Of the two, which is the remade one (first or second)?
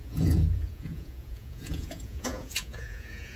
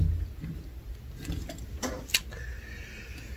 first